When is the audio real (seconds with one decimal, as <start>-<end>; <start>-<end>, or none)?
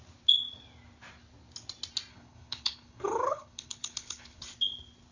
0.0-2.1; 4.4-5.1